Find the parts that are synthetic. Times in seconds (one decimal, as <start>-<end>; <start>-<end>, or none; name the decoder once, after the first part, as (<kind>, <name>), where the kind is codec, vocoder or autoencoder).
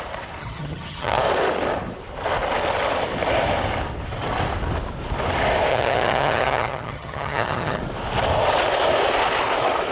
0.4-1.2 (vocoder, HiFi-GAN); 5.7-7.8